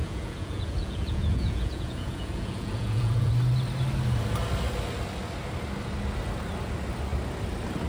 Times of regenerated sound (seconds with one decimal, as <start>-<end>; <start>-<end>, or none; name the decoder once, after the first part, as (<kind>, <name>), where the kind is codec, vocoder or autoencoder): 0.0-3.3 (vocoder, Vocos)